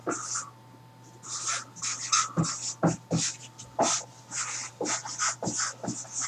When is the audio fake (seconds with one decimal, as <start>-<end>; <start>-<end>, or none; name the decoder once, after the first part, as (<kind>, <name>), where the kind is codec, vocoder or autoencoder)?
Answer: none